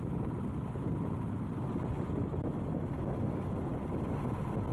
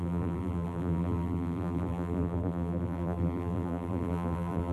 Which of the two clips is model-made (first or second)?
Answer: second